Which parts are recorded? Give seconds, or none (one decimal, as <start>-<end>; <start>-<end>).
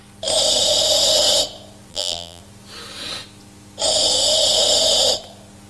0.0-1.9; 2.4-5.7